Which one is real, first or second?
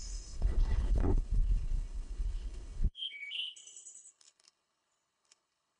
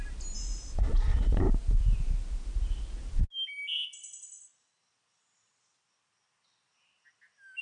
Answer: second